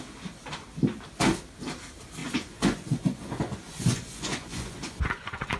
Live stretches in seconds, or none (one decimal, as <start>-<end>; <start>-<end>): 0.0-2.2